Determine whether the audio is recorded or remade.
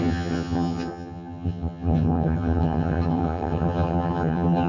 remade